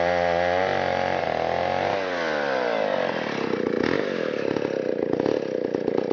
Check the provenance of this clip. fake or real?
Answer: real